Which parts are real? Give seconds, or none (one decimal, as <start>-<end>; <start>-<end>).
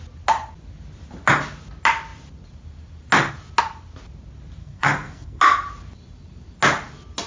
0.0-4.6; 5.4-7.3